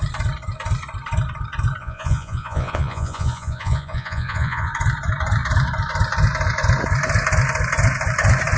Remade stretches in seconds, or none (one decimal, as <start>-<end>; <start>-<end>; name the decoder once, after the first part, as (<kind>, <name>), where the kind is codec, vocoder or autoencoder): 1.8-4.7 (vocoder, Vocos)